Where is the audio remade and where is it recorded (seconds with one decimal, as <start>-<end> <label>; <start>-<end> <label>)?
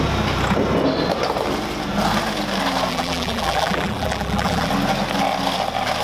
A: 0.0-2.9 recorded; 2.9-4.7 remade; 4.7-6.0 recorded